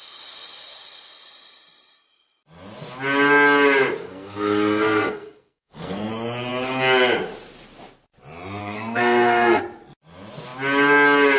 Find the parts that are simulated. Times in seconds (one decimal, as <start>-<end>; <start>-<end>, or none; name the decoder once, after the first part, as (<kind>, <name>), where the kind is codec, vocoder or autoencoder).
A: 4.1-6.1 (codec, SNAC); 8.6-9.6

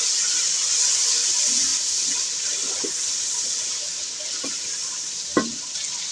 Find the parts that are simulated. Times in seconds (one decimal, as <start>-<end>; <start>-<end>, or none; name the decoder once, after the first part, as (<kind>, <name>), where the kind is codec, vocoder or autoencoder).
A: none